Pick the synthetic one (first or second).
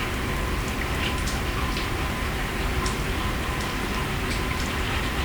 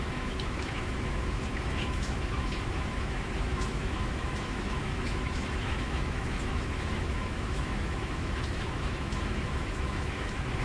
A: second